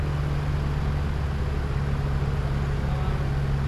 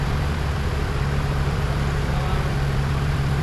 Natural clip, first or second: first